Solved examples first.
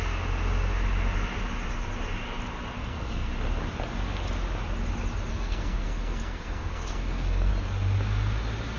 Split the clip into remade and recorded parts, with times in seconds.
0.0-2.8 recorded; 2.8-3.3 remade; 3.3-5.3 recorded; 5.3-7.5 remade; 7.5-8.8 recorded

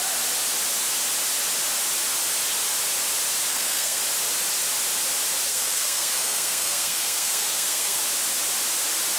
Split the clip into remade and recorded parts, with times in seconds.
0.0-3.5 recorded; 3.5-4.0 remade; 4.0-5.5 recorded; 5.5-8.0 remade; 8.0-9.2 recorded

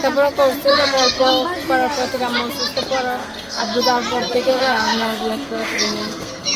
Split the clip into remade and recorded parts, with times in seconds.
0.0-0.7 recorded; 0.7-1.3 remade; 1.3-3.2 recorded; 3.2-3.8 remade; 3.8-4.5 recorded; 4.5-6.6 remade